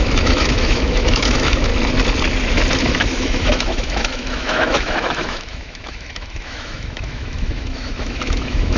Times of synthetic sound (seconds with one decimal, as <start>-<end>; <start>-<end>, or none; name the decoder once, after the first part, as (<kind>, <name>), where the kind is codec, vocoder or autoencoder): 0.0-1.7 (autoencoder, DAC-VAE); 2.8-8.8